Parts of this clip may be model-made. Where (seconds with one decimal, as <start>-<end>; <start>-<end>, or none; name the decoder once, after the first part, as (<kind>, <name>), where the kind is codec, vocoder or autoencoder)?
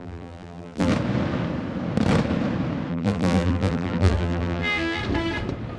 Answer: 0.0-0.9 (vocoder, BigVGAN v2); 2.9-5.0